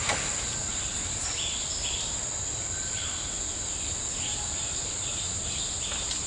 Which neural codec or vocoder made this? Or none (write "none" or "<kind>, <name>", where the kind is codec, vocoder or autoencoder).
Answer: none